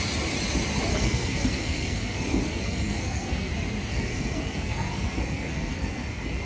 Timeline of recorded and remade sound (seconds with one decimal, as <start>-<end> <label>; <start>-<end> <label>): 0.0-0.9 recorded; 0.9-3.5 remade; 3.5-3.9 recorded; 3.9-6.5 remade